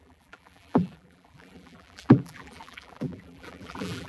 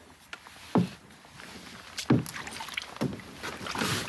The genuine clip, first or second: second